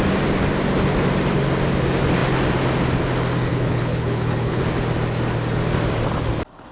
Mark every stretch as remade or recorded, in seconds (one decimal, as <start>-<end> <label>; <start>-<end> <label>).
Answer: 0.0-3.5 recorded; 3.5-4.6 remade; 4.6-6.7 recorded